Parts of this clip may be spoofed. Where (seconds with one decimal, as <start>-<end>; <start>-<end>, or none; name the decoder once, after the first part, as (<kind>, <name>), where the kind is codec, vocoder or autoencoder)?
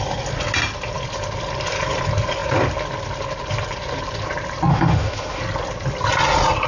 4.7-5.4 (autoencoder, DAC-VAE)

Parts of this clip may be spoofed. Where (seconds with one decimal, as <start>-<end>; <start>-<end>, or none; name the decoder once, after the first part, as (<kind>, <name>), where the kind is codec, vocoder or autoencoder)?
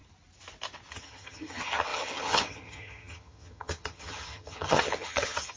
0.9-5.6 (vocoder, HiFi-GAN)